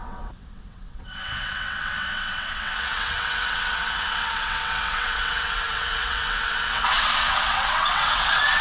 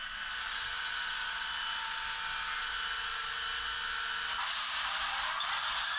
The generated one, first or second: first